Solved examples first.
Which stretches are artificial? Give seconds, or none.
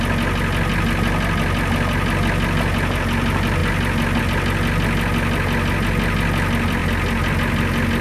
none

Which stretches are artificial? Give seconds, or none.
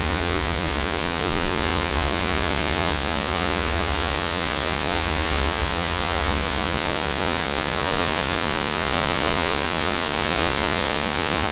0.0-11.5 (vocoder, Vocos)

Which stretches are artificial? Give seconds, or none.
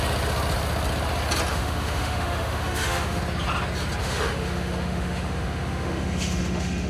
1.5-3.2 (autoencoder, DAC-VAE); 4.0-6.9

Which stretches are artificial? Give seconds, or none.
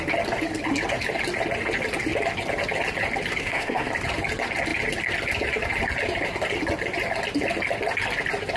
3.4-3.9 (codec, SNAC)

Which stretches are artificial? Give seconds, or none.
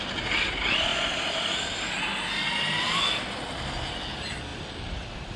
4.5-5.4 (vocoder, BigVGAN v2)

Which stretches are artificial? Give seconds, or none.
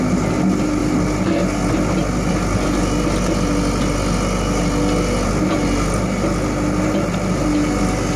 none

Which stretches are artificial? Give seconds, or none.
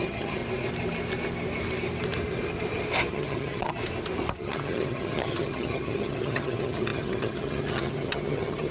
0.0-0.4 (vocoder, HiFi-GAN); 3.1-3.8; 4.4-8.7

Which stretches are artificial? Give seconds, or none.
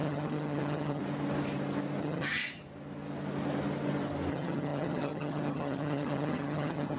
0.0-1.0 (vocoder, HiFi-GAN); 2.0-2.4; 4.3-7.0